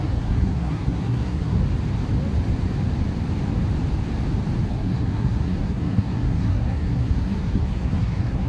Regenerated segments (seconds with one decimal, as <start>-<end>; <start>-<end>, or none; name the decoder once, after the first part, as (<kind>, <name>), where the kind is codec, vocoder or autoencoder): 0.0-1.6 (codec, SNAC); 4.7-8.5